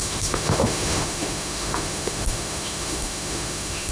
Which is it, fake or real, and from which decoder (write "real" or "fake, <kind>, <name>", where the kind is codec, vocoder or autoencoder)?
fake, autoencoder, DAC-VAE